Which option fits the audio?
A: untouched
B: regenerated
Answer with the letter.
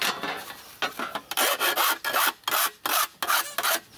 A